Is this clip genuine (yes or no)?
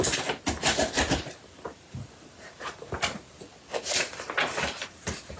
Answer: yes